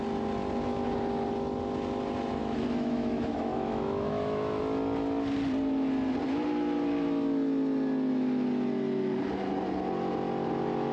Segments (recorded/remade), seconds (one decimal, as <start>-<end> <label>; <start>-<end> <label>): 0.0-2.4 recorded; 2.4-4.6 remade; 4.6-10.9 recorded